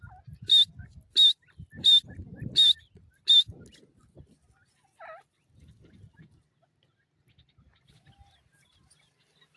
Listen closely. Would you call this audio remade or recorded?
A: recorded